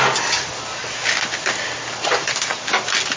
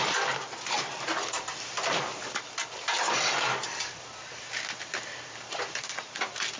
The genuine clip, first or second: first